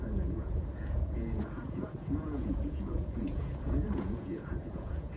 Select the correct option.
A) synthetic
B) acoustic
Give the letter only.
A